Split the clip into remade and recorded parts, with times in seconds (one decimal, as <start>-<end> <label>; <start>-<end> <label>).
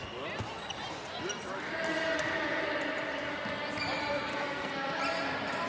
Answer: 0.0-4.3 recorded; 4.3-5.0 remade; 5.0-5.7 recorded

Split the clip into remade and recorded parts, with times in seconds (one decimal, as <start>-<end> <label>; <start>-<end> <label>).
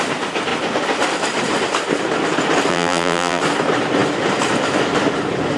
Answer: 0.0-2.7 recorded; 2.7-3.4 remade; 3.4-5.6 recorded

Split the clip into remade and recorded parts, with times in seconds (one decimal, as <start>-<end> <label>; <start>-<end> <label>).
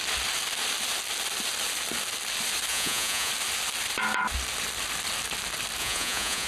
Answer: 0.0-2.7 recorded; 2.7-3.3 remade; 3.3-5.8 recorded; 5.8-6.5 remade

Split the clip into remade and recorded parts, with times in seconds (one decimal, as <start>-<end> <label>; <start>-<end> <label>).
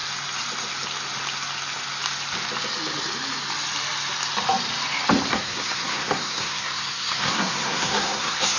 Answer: 0.0-5.3 recorded; 5.3-8.6 remade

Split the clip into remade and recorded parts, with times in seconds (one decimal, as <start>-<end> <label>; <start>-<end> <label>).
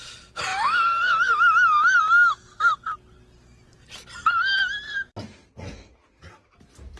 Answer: 0.0-7.0 recorded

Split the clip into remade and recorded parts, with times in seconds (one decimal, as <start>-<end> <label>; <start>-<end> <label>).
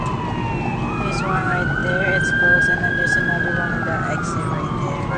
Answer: 0.0-5.2 recorded